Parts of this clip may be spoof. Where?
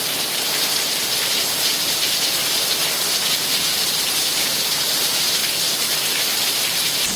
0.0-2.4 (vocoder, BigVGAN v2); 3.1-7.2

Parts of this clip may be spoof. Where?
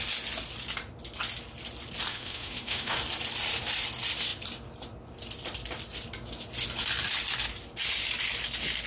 2.1-3.0 (autoencoder, DAC-VAE)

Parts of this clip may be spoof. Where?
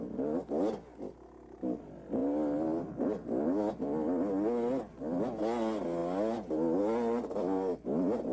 none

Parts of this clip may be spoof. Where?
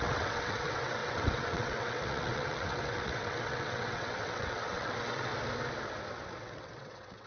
0.0-5.3 (vocoder, WaveNeXt); 6.4-7.3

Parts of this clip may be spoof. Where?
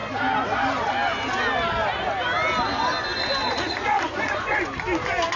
3.5-4.6 (vocoder, Vocos)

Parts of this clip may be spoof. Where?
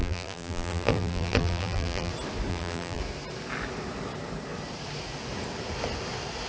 0.0-2.1 (vocoder, BigVGAN v2); 2.5-3.0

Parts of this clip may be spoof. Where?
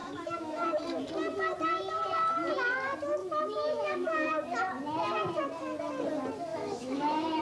0.0-1.0 (autoencoder, DAC-VAE); 3.2-4.3; 6.5-7.4